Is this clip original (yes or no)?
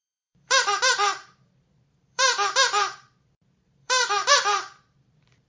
no